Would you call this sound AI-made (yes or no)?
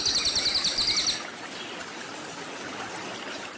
no